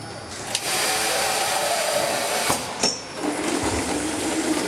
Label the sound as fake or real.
real